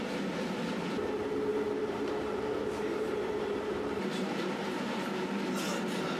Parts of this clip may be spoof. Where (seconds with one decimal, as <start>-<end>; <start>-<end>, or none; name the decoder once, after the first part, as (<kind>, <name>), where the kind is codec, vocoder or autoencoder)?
1.5-5.2 (vocoder, BigVGAN v2)